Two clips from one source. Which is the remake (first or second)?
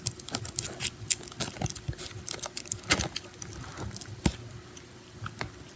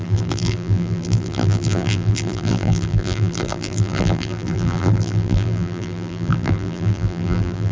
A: second